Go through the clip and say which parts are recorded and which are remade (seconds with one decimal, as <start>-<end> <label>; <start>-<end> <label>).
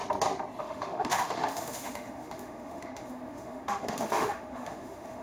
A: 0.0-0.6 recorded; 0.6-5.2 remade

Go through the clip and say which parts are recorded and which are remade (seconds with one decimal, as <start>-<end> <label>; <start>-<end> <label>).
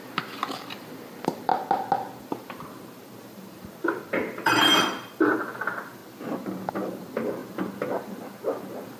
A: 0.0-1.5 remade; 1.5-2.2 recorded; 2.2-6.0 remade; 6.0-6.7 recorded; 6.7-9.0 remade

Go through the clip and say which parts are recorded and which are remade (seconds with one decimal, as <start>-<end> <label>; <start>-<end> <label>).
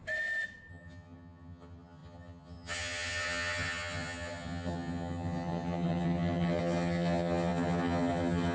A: 0.0-0.7 recorded; 0.7-8.5 remade